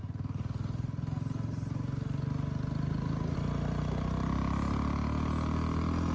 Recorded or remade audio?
recorded